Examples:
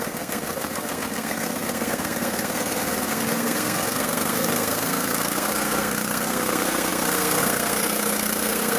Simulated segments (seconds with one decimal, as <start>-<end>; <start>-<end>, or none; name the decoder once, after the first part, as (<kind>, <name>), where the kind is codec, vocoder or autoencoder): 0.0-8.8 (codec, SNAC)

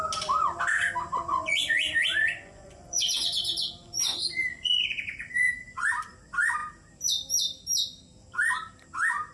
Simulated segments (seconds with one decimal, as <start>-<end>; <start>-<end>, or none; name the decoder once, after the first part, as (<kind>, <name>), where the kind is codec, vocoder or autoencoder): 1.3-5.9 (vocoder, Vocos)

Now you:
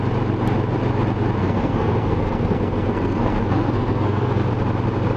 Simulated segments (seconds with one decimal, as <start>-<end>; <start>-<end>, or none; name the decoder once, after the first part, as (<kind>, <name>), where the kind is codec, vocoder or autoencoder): 1.4-4.5 (codec, SNAC)

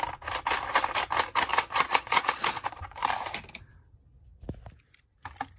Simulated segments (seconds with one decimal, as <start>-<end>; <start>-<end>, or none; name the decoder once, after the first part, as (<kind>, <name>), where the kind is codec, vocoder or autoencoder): 1.5-3.0 (vocoder, Vocos)